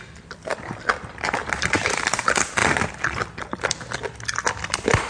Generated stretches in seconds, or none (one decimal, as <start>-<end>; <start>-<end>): none